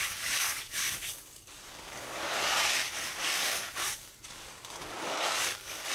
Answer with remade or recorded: remade